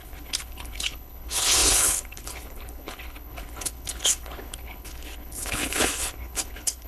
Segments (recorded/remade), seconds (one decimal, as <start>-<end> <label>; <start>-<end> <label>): 0.0-6.9 remade